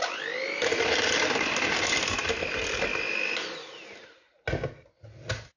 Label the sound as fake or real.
real